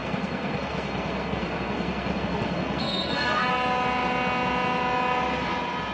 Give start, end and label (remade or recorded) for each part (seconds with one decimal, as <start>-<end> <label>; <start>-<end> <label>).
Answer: 0.0-3.5 remade; 3.5-5.9 recorded